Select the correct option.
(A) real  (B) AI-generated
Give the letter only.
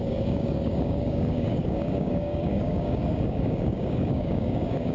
B